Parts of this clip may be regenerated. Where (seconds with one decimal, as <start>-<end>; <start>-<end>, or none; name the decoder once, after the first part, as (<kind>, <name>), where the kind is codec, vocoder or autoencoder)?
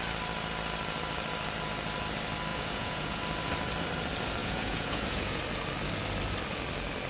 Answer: 2.5-3.2 (vocoder, Vocos); 4.4-5.4